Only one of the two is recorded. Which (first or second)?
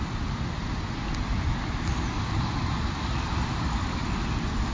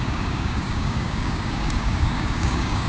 first